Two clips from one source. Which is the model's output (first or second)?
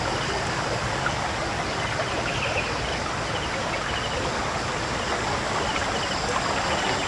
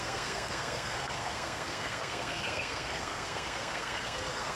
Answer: second